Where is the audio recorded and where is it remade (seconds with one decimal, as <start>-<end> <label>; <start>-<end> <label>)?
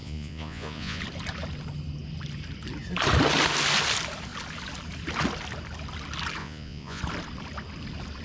0.0-1.0 remade; 1.0-6.4 recorded; 6.4-7.0 remade; 7.0-8.2 recorded